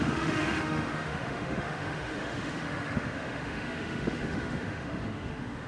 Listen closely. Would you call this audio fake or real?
fake